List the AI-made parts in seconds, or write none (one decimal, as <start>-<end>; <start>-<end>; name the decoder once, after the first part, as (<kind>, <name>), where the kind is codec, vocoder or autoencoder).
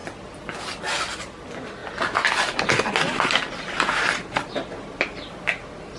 none